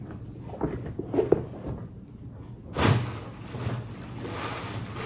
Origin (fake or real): real